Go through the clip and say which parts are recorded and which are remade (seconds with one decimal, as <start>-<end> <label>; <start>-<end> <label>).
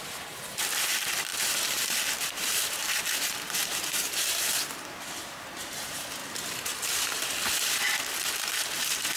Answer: 0.0-6.2 remade; 6.2-7.7 recorded; 7.7-9.2 remade